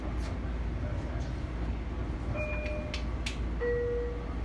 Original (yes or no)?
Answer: yes